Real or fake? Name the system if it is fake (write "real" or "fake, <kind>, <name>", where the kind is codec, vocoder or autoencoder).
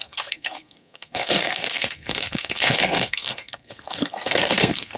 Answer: fake, codec, SNAC